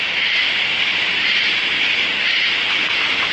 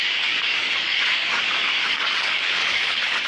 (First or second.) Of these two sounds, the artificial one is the second